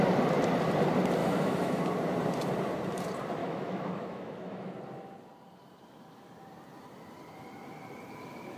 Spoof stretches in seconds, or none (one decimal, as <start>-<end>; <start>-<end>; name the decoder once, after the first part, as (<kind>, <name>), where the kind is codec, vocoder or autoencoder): 1.2-1.8 (autoencoder, DAC-VAE); 3.4-4.8